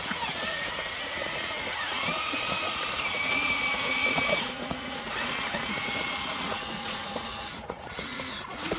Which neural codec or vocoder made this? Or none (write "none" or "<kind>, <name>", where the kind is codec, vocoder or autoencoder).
vocoder, Vocos